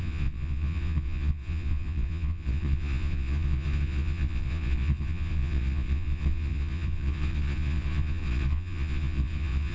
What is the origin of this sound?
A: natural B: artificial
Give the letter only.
B